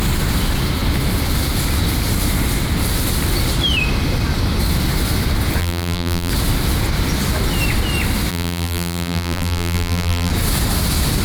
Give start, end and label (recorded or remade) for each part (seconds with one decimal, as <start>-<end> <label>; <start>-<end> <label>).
0.0-5.6 recorded; 5.6-6.3 remade; 6.3-8.3 recorded; 8.3-10.3 remade; 10.3-11.2 recorded